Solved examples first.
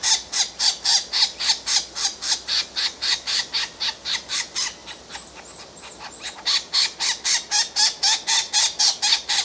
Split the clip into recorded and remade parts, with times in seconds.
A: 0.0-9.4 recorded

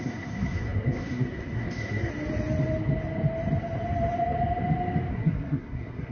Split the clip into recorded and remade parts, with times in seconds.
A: 0.0-2.1 remade; 2.1-5.1 recorded; 5.1-6.1 remade

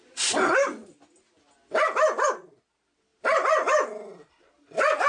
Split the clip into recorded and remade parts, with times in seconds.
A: 0.0-5.1 recorded